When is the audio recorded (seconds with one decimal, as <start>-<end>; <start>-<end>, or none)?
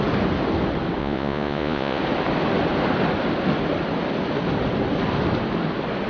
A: 0.0-1.0; 2.0-6.1